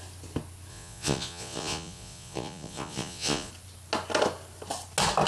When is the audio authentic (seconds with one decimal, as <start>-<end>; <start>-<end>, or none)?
0.0-0.7; 3.5-5.3